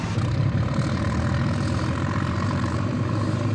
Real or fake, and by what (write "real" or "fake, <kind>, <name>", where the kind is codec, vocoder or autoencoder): fake, vocoder, BigVGAN v2